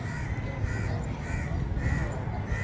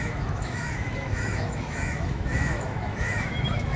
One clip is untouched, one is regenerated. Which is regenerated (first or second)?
second